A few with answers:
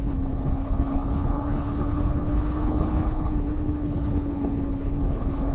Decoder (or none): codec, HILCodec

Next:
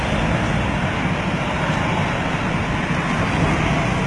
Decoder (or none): none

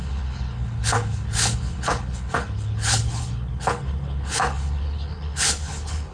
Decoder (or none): codec, HILCodec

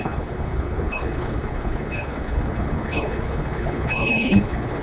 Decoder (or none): codec, HILCodec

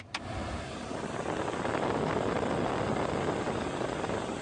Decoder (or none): none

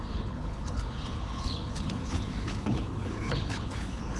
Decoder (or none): codec, HILCodec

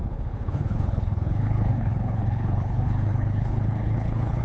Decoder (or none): codec, HILCodec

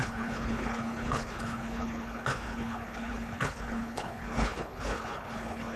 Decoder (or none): codec, HILCodec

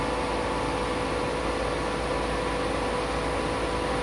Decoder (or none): none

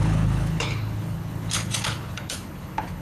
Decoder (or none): codec, HILCodec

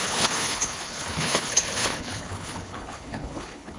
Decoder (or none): codec, HILCodec